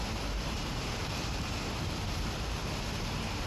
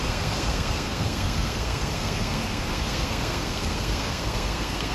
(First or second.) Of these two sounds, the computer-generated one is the second